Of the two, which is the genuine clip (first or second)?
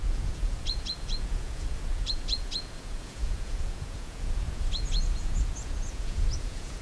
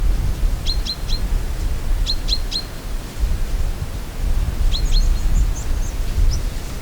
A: second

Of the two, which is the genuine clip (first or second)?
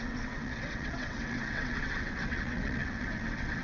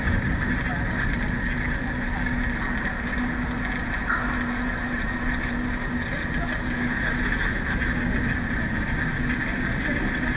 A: second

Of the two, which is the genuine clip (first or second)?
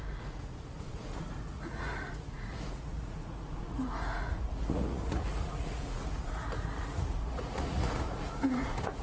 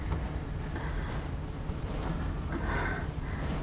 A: second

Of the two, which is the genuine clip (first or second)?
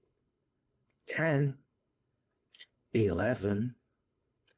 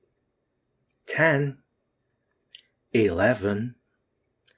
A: second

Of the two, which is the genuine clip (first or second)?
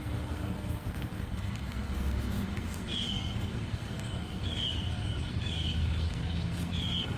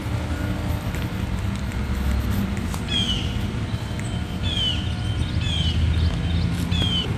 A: second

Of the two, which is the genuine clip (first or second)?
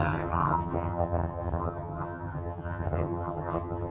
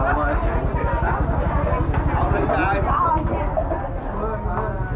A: second